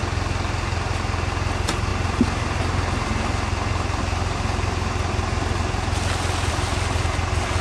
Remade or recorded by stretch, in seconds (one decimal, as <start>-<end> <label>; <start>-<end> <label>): 0.0-7.6 recorded